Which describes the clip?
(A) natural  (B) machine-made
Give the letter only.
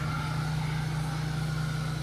A